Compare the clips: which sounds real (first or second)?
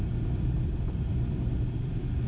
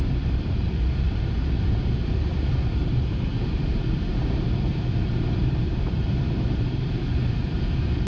first